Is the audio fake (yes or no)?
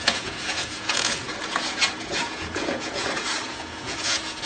yes